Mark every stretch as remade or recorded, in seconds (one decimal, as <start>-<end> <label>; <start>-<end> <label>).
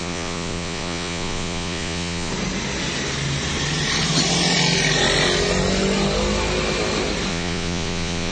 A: 0.0-2.3 remade; 2.3-7.3 recorded; 7.3-8.3 remade